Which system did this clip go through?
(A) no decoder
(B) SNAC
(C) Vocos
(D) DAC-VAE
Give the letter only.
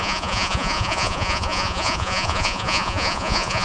C